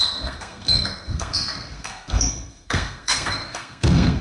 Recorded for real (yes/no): no